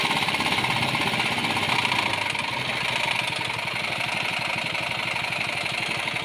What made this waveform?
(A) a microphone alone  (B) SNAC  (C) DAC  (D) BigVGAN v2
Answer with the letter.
A